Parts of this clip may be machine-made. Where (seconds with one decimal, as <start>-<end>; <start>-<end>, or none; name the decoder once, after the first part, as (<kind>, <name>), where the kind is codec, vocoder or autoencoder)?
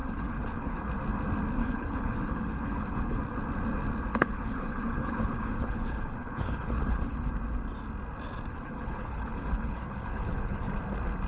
0.0-0.8 (codec, HILCodec); 1.6-3.2; 4.1-7.3; 8.5-10.7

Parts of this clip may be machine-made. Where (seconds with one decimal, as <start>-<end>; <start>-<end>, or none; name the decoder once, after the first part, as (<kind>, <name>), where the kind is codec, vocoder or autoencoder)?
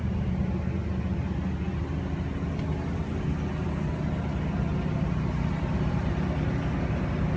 none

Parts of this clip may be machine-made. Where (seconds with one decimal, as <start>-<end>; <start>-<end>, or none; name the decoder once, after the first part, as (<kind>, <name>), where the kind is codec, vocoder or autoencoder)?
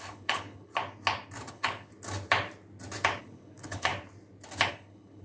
0.0-0.7 (codec, HILCodec); 1.5-1.9; 3.2-3.9; 4.7-5.2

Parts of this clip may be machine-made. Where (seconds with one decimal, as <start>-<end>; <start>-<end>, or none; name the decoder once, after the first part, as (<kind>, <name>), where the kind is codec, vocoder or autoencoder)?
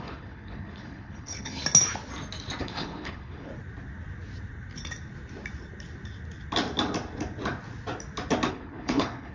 0.0-1.6 (codec, HILCodec); 2.6-3.5; 8.5-9.3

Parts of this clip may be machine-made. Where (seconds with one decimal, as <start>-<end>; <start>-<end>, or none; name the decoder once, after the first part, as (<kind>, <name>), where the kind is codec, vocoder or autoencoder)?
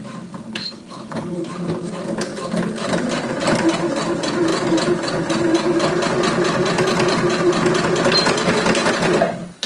0.5-1.5 (codec, HILCodec)